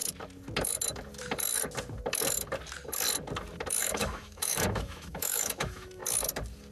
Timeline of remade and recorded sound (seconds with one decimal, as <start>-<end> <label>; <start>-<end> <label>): 0.0-3.8 recorded; 3.8-6.0 remade; 6.0-6.7 recorded